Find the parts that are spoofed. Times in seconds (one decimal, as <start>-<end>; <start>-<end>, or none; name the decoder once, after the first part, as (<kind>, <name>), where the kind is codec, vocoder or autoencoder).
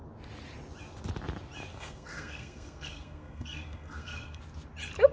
1.7-4.4 (codec, SNAC)